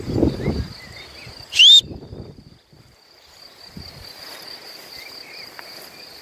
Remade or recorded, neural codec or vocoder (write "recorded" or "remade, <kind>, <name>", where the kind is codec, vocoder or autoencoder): recorded